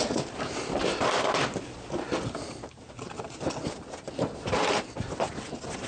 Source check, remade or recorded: recorded